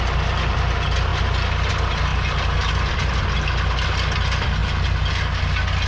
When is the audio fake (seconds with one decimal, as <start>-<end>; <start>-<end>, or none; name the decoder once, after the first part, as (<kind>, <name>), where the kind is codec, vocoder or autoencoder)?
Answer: none